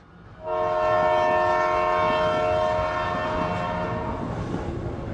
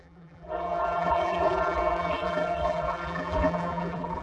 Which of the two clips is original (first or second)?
first